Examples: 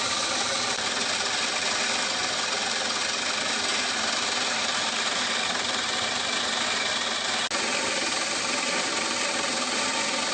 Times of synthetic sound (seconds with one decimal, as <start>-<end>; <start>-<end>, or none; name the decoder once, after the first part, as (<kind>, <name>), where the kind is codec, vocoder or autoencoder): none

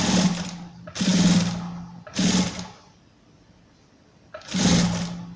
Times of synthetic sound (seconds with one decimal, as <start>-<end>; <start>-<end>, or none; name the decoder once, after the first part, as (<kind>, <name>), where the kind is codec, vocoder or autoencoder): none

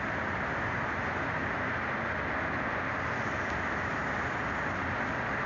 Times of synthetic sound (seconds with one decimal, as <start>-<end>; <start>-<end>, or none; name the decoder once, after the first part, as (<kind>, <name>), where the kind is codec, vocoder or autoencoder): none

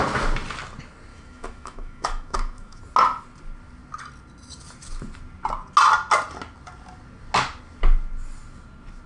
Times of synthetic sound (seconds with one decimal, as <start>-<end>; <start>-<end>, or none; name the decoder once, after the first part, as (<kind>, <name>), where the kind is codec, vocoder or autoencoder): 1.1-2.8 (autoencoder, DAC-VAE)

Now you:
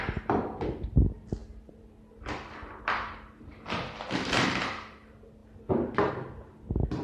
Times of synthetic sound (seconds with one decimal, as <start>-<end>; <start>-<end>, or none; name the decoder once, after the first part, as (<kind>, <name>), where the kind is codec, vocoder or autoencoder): none

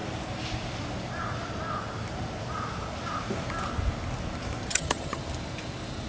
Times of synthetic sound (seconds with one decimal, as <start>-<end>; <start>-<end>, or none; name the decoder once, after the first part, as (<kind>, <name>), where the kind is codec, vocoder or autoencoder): 4.7-5.2 (vocoder, HiFi-GAN)

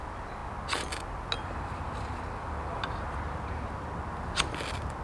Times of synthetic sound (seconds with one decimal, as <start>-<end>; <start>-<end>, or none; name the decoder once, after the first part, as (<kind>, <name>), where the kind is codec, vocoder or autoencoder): none

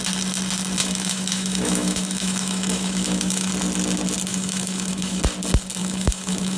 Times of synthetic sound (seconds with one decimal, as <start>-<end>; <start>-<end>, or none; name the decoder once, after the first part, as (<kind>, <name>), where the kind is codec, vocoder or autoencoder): 0.8-3.5 (autoencoder, DAC-VAE); 4.3-5.2; 5.8-6.6